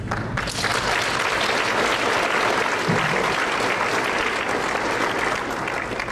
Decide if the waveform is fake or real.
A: real